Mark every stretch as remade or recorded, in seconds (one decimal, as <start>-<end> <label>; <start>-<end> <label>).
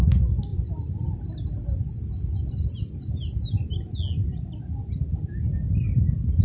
0.0-6.4 recorded